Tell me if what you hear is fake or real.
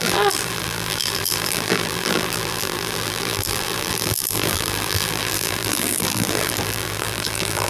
fake